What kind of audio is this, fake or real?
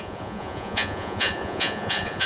fake